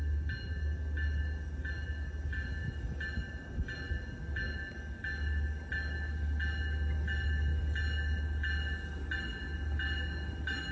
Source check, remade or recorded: recorded